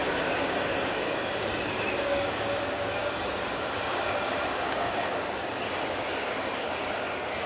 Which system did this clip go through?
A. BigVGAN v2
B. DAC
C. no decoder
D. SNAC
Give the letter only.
B